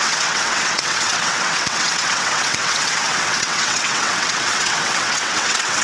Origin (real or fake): fake